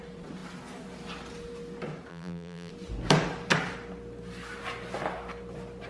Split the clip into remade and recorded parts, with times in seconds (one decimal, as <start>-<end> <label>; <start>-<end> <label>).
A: 0.0-2.1 recorded; 2.1-2.7 remade; 2.7-5.9 recorded